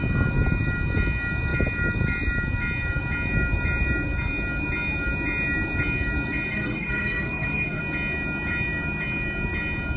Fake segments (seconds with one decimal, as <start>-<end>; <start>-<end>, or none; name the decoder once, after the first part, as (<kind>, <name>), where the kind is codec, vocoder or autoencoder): 6.5-7.8 (codec, SNAC)